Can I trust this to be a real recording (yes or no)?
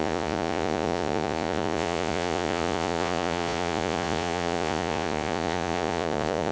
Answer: no